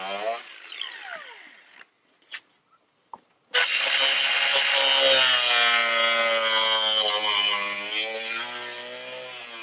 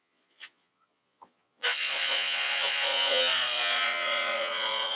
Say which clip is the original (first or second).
first